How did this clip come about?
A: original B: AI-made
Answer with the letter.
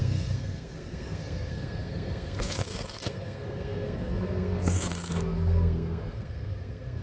B